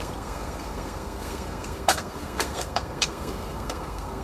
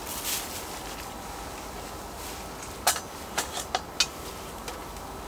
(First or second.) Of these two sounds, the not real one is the first